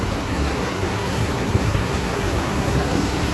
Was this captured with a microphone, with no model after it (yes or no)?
no